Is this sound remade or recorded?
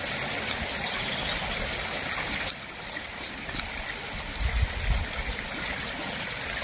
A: recorded